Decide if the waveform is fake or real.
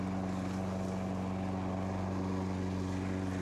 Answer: real